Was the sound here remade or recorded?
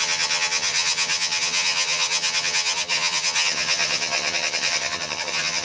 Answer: remade